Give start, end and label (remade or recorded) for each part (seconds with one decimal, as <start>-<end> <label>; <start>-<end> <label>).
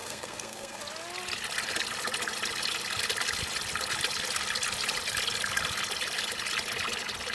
0.0-0.8 remade; 0.8-7.3 recorded